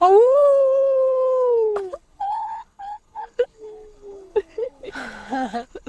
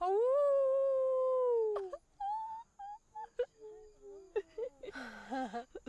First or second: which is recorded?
second